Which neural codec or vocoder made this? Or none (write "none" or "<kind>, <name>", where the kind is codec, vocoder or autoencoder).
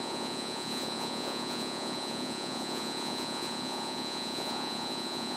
vocoder, Vocos